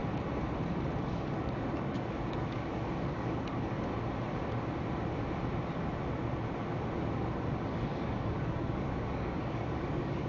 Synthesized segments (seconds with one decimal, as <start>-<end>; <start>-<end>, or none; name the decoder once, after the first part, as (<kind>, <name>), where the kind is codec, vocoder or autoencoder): 1.0-3.9 (codec, DAC); 7.7-10.3